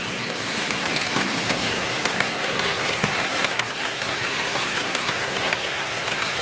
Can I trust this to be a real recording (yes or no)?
no